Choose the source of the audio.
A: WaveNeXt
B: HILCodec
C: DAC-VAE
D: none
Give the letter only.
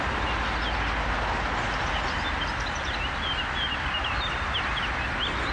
D